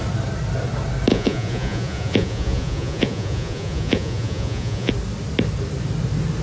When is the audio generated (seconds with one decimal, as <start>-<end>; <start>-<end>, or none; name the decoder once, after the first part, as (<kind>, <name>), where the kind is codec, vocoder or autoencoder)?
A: 1.1-4.9 (vocoder, Vocos)